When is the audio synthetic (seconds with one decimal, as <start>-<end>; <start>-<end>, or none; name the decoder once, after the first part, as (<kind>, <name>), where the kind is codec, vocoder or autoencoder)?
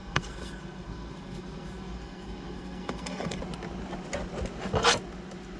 0.0-3.4 (codec, SNAC)